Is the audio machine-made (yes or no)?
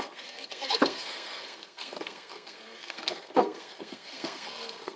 yes